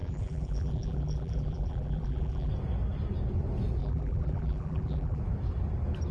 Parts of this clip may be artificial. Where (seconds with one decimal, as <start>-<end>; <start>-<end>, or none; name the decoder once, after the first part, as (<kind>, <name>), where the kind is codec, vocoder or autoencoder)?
0.0-2.5 (vocoder, BigVGAN v2); 3.8-5.2